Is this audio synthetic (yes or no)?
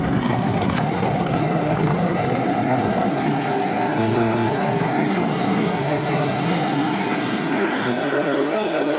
yes